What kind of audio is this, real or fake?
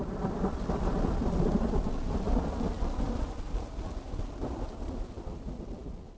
real